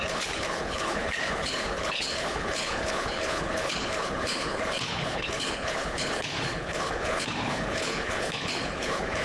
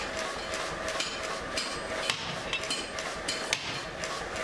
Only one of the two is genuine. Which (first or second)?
second